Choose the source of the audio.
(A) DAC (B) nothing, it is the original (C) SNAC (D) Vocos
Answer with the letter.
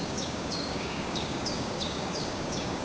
A